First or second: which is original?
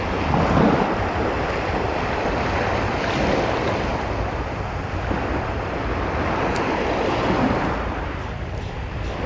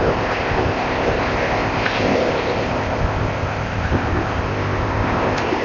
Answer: first